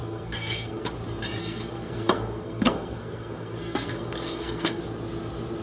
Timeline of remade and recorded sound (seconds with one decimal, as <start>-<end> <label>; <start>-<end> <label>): 0.0-0.9 remade; 0.9-1.4 recorded; 1.4-4.8 remade; 4.8-5.6 recorded